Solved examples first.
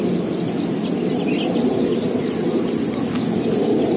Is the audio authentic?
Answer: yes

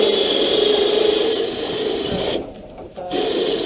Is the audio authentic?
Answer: no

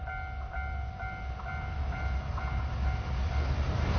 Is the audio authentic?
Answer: yes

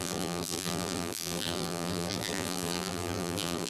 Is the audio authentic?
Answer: no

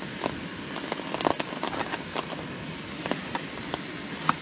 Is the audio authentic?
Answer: yes